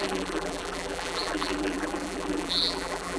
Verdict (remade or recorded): remade